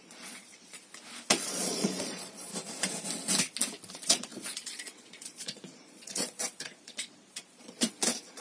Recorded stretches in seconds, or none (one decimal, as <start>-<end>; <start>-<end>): 0.8-1.3; 2.5-3.9